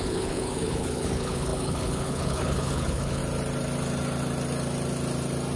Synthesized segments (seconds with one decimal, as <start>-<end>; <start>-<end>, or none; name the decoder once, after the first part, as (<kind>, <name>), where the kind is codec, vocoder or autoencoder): 0.0-3.2 (codec, HILCodec)